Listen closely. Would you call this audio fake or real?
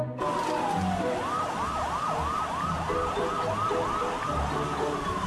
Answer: real